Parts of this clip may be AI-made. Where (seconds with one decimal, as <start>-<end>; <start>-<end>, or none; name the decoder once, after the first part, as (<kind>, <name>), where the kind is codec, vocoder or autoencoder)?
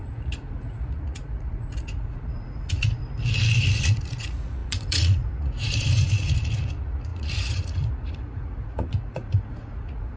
0.0-3.0 (vocoder, Vocos); 3.6-10.2